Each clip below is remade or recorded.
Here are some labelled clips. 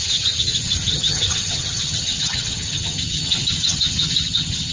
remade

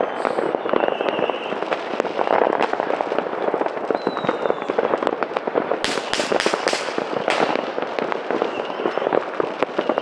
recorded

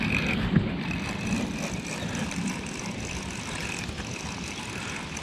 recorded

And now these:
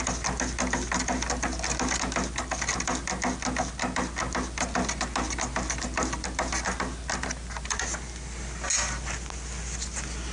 recorded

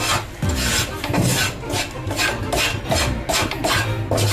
recorded